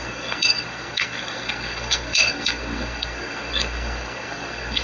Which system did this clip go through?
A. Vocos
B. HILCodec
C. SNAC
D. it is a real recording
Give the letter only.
C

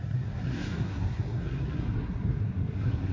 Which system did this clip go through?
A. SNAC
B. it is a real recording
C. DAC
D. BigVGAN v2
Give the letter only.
A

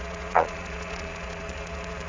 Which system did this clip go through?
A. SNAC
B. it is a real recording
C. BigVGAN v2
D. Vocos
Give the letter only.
D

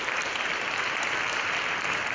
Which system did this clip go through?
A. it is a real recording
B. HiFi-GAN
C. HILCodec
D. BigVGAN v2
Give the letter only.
A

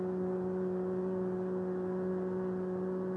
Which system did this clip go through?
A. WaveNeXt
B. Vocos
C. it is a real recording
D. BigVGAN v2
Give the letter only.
C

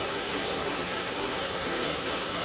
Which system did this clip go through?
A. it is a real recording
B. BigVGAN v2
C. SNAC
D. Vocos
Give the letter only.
C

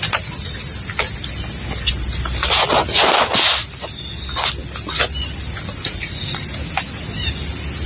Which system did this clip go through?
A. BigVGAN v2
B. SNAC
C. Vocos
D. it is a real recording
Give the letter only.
D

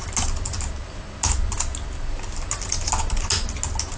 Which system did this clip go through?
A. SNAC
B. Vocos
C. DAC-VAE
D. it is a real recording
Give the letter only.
D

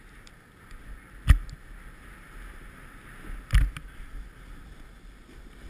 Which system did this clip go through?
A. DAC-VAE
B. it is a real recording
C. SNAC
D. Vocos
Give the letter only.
B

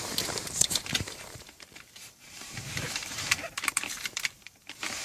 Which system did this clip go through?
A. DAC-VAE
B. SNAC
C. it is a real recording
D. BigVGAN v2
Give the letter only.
D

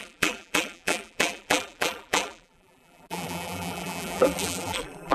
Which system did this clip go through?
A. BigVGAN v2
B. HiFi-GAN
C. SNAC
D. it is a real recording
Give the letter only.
A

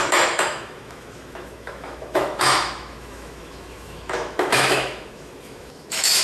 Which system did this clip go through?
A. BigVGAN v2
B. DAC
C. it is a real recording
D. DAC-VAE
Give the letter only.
D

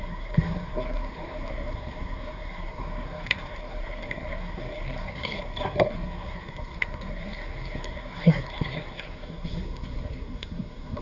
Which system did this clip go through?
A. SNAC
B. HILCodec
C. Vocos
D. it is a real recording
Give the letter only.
A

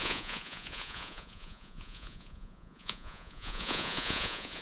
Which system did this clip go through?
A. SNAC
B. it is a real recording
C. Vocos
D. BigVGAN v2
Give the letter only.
C